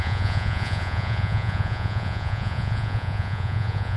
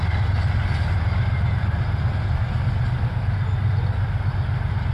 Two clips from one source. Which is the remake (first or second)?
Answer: first